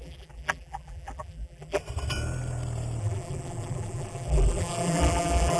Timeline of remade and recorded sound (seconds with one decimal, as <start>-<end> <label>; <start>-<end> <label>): 0.0-1.8 remade; 1.8-3.0 recorded; 3.0-5.6 remade